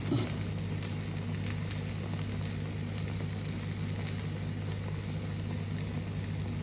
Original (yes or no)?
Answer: yes